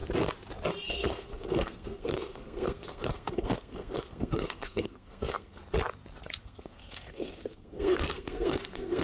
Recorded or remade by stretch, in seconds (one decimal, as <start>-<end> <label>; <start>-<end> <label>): 0.0-0.8 recorded; 0.8-5.6 remade; 5.6-6.4 recorded; 6.4-9.0 remade